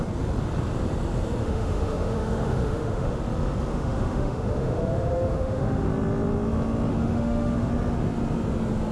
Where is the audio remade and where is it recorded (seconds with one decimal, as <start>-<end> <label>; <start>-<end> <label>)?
0.0-1.4 recorded; 1.4-3.2 remade; 3.2-3.7 recorded; 3.7-5.9 remade; 5.9-6.9 recorded; 6.9-7.7 remade; 7.7-8.9 recorded